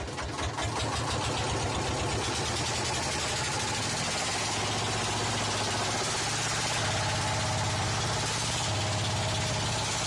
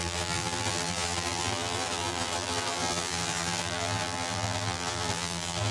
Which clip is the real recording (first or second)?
first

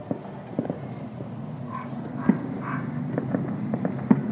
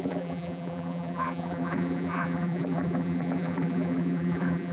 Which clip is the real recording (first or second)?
first